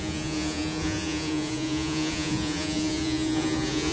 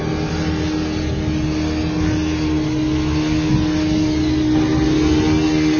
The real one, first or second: second